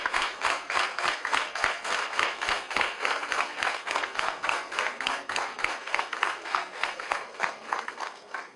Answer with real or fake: fake